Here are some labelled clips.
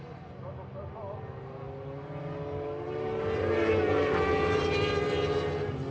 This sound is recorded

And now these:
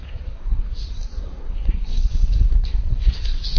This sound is remade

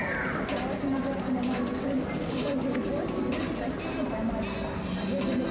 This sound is recorded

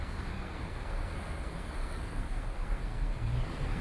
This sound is remade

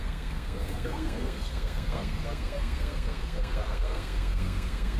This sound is remade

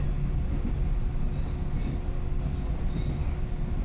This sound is recorded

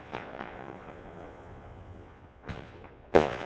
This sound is remade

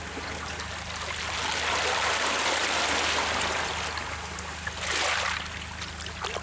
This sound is recorded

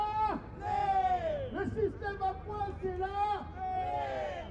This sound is recorded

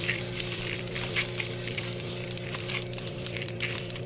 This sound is remade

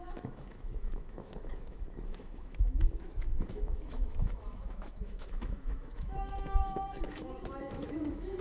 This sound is remade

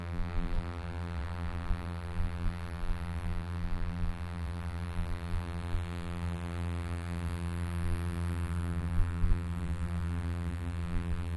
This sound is remade